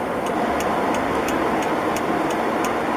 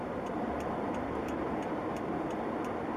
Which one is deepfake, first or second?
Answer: second